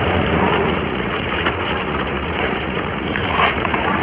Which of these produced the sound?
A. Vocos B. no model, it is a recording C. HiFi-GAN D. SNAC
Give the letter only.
A